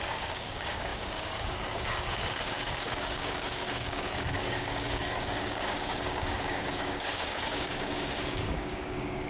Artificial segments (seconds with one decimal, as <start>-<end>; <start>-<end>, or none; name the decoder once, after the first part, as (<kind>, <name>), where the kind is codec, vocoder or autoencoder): 0.0-9.3 (codec, DAC)